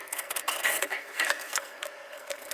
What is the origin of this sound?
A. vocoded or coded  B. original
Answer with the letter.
A